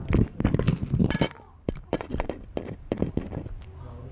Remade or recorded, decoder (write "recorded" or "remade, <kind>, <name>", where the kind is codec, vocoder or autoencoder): remade, vocoder, BigVGAN v2